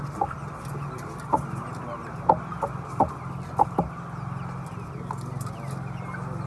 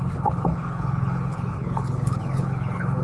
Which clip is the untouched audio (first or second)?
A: first